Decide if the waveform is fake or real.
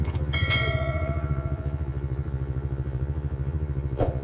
fake